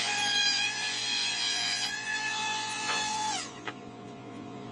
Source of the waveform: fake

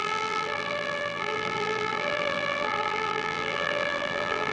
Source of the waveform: fake